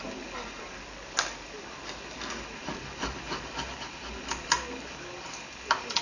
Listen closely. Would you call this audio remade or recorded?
recorded